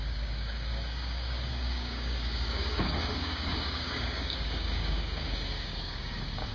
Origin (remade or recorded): remade